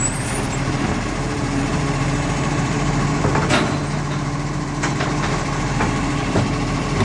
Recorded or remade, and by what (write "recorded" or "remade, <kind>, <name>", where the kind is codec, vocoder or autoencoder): remade, vocoder, BigVGAN v2